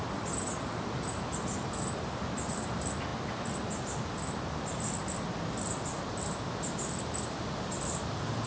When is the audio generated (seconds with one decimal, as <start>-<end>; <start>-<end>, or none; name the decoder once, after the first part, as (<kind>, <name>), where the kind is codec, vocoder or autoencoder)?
none